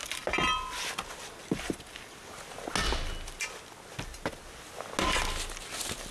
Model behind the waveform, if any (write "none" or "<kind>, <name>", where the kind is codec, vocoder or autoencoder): none